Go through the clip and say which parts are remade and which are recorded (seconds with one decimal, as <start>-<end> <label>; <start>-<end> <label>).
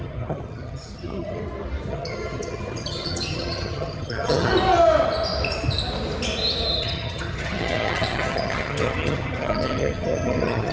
0.0-1.4 remade; 1.4-1.9 recorded; 1.9-4.5 remade; 4.5-6.7 recorded; 6.7-10.7 remade